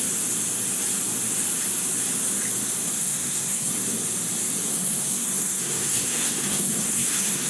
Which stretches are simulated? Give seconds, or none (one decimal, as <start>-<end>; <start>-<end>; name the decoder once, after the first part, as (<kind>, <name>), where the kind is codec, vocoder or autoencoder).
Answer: 3.0-3.7 (codec, SNAC); 4.7-7.5